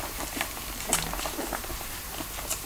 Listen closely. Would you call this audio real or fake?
real